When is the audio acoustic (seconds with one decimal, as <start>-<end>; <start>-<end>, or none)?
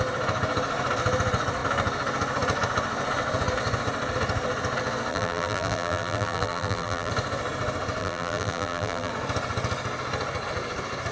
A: 0.0-5.1; 7.1-8.0; 9.1-11.1